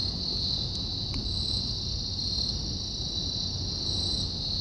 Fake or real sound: real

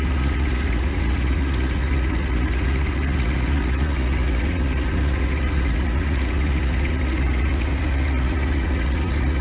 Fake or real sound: fake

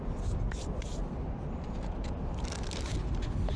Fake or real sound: real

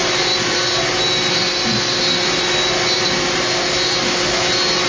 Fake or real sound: real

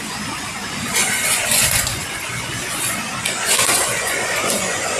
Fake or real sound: fake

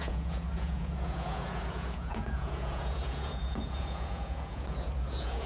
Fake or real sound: fake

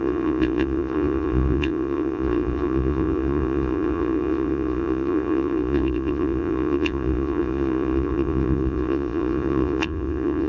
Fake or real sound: fake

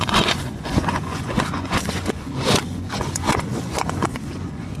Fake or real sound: fake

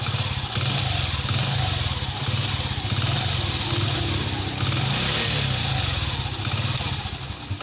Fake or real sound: real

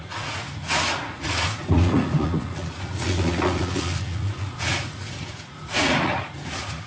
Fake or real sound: fake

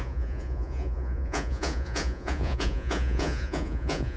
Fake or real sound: fake